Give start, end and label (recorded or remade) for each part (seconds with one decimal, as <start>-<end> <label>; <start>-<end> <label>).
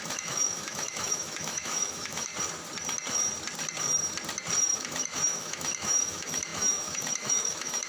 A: 0.0-2.3 remade; 2.3-4.6 recorded; 4.6-7.9 remade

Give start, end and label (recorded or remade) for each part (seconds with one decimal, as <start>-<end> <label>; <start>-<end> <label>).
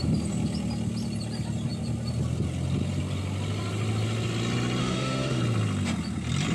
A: 0.0-4.8 recorded; 4.8-5.4 remade; 5.4-6.5 recorded